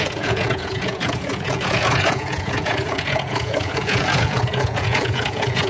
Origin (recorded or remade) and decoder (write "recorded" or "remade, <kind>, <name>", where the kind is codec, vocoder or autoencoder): remade, vocoder, Vocos